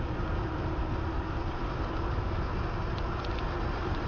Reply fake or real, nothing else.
real